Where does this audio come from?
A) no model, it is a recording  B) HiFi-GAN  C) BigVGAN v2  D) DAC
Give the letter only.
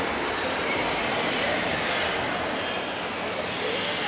A